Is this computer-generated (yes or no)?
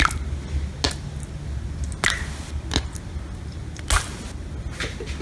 no